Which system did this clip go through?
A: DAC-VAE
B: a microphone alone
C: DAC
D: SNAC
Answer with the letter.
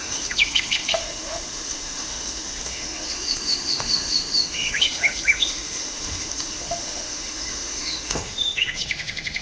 A